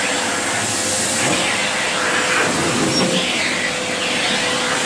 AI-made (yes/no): no